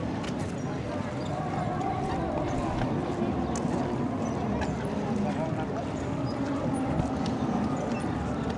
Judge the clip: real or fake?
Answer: real